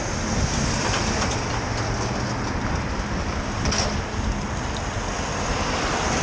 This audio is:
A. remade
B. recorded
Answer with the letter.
B